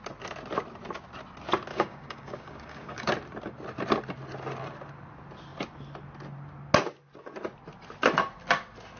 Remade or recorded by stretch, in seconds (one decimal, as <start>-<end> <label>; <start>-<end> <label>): 0.0-1.7 recorded; 1.7-3.1 remade; 3.1-9.0 recorded